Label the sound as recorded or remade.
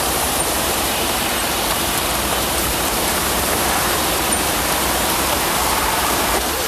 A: remade